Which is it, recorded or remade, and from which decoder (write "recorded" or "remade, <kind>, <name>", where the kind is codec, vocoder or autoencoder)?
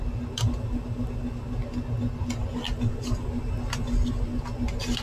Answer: recorded